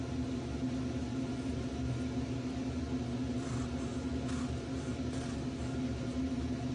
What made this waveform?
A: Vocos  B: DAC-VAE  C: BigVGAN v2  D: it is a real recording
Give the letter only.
D